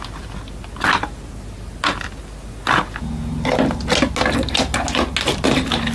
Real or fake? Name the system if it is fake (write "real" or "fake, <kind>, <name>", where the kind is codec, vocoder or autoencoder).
real